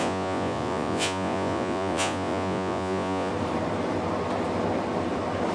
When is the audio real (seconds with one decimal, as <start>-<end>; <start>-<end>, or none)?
3.3-5.5